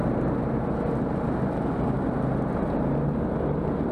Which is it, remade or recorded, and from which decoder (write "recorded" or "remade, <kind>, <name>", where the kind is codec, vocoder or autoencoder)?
recorded